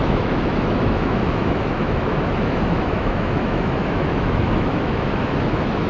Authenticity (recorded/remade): remade